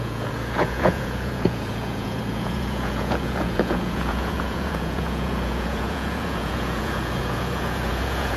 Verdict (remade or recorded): remade